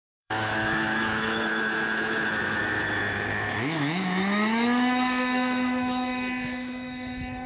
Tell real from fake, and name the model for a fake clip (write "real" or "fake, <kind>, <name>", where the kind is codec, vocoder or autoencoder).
fake, autoencoder, DAC-VAE